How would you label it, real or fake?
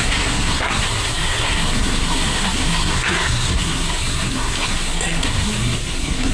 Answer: fake